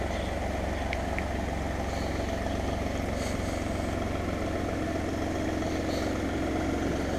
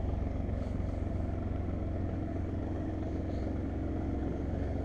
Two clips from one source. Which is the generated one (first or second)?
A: second